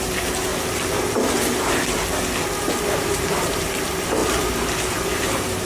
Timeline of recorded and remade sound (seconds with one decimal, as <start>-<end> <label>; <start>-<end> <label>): 0.0-0.5 remade; 0.5-2.8 recorded; 2.8-4.2 remade; 4.2-4.9 recorded; 4.9-5.7 remade